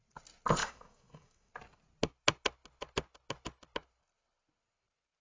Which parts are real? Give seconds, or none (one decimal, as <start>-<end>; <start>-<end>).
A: 0.0-0.6; 1.5-5.2